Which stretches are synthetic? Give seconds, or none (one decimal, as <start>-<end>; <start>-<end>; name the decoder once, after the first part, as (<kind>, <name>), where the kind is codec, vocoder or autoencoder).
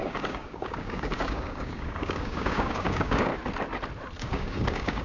0.0-3.3 (codec, DAC); 4.2-5.0